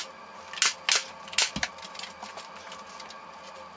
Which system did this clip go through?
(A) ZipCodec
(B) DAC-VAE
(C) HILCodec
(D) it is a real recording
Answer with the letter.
D